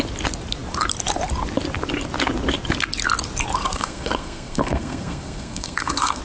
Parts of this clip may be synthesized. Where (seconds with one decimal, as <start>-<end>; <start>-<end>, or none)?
3.6-6.2